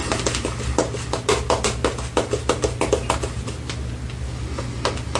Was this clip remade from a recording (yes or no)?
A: no